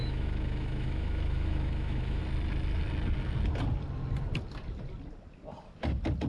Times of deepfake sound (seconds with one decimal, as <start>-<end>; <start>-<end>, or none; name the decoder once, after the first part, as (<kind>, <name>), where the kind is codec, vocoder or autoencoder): 0.0-2.2 (autoencoder, DAC-VAE)